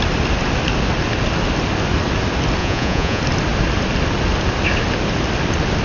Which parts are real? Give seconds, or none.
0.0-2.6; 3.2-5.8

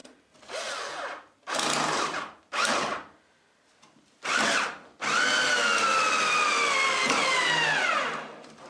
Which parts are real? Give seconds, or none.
0.0-8.7

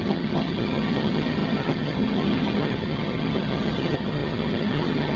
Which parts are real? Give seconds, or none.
none

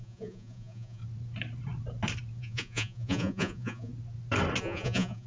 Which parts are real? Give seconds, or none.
1.0-2.4; 3.9-4.6

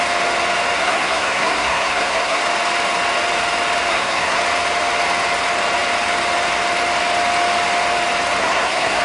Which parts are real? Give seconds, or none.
0.0-0.8; 2.4-3.9; 4.4-8.4

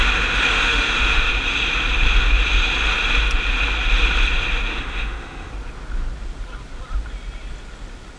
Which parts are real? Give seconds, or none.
0.0-0.5; 1.3-4.7; 5.5-8.2